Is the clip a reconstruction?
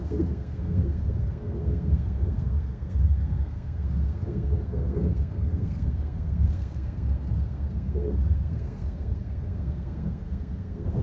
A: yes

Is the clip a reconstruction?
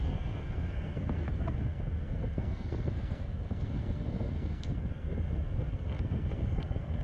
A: yes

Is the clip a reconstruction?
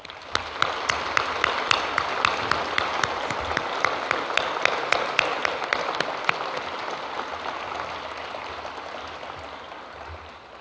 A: no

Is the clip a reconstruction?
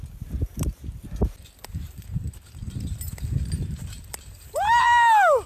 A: no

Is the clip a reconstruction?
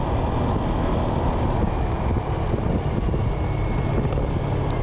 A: no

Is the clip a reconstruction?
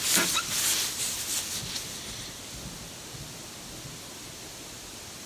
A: no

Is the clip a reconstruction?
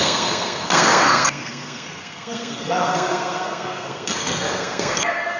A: yes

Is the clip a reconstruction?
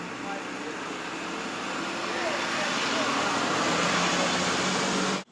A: no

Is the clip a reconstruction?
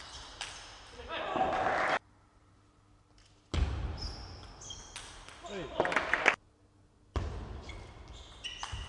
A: no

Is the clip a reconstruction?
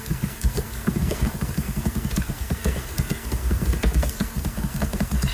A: yes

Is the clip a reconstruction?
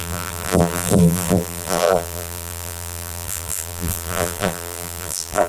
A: yes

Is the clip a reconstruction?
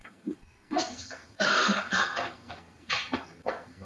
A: yes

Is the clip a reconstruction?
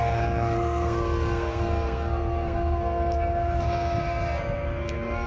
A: yes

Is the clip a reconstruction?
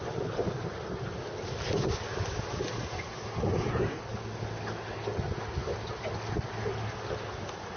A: no